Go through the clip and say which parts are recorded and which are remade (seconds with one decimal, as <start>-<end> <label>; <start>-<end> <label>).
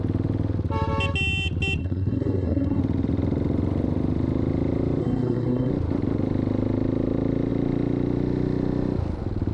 0.0-1.8 recorded; 1.8-2.8 remade; 2.8-5.0 recorded; 5.0-5.7 remade; 5.7-9.5 recorded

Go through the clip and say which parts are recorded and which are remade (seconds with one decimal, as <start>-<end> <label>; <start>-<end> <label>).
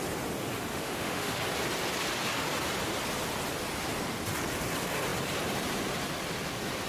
0.0-0.7 recorded; 0.7-1.4 remade; 1.4-6.9 recorded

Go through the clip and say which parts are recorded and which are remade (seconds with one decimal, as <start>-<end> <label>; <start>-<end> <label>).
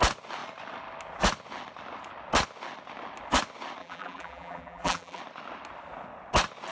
0.0-3.8 recorded; 3.8-5.2 remade; 5.2-6.7 recorded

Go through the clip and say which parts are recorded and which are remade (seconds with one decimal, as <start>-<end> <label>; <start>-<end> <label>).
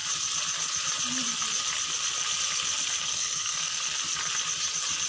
0.0-3.0 recorded; 3.0-3.8 remade; 3.8-5.1 recorded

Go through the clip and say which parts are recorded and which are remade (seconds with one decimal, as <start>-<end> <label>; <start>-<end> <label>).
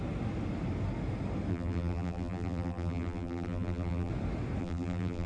0.0-1.5 recorded; 1.5-4.1 remade; 4.1-4.6 recorded; 4.6-5.3 remade